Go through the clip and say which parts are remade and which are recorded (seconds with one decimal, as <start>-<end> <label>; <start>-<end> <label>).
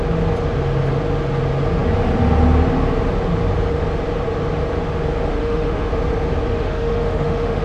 0.0-5.3 recorded; 5.3-5.9 remade; 5.9-6.5 recorded; 6.5-7.6 remade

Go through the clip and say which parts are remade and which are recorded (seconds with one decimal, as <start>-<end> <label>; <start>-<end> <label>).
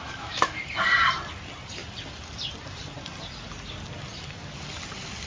0.0-0.6 remade; 0.6-5.3 recorded